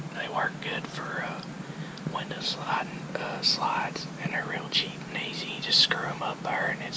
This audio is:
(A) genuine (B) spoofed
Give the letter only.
A